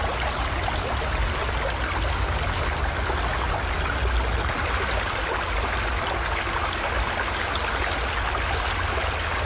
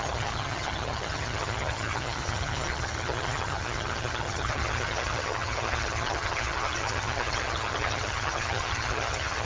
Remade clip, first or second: second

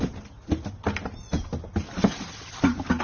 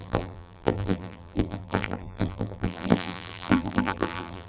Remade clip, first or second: second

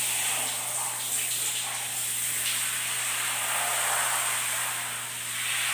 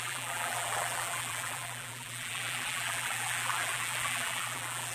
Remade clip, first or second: second